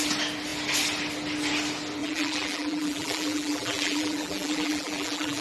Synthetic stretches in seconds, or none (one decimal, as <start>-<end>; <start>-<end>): 2.0-5.4